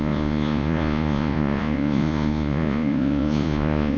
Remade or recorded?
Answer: remade